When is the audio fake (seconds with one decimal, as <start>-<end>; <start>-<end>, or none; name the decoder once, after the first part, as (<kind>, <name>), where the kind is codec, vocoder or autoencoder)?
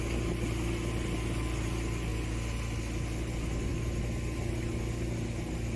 none